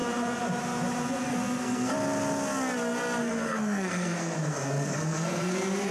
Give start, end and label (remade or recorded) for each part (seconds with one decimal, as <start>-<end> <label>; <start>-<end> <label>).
0.0-1.2 recorded; 1.2-1.9 remade; 1.9-3.2 recorded; 3.2-5.5 remade; 5.5-5.9 recorded